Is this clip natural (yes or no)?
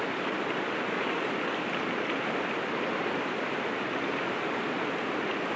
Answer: yes